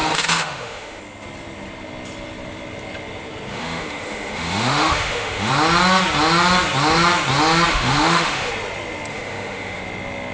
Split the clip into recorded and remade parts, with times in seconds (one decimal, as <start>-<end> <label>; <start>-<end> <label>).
0.0-1.0 remade; 1.0-3.5 recorded; 3.5-5.5 remade; 5.5-7.7 recorded; 7.7-8.5 remade; 8.5-9.1 recorded; 9.1-9.8 remade; 9.8-10.3 recorded